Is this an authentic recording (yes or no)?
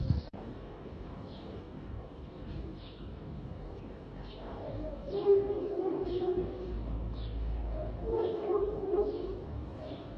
no